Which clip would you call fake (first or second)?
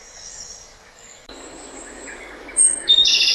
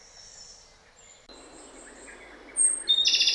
first